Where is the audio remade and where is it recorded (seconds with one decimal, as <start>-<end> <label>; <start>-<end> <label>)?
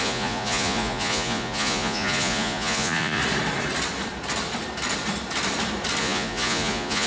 0.0-3.2 remade; 3.2-6.0 recorded; 6.0-7.1 remade